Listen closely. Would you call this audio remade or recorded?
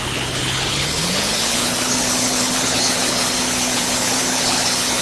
remade